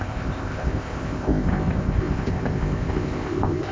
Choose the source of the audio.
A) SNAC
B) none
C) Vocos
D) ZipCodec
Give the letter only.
D